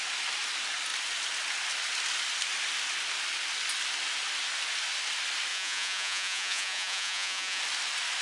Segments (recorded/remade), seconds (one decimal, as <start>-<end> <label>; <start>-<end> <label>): 0.0-5.5 recorded; 5.5-7.6 remade; 7.6-8.2 recorded